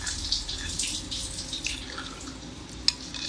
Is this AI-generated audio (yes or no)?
no